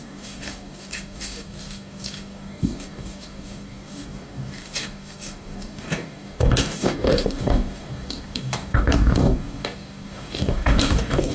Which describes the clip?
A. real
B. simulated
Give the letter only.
B